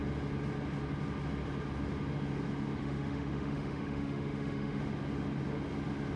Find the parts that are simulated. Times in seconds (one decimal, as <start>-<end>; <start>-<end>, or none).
2.8-4.8